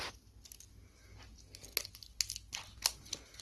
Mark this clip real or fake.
real